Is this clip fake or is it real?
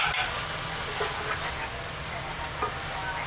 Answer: real